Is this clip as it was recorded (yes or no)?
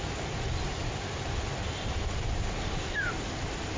yes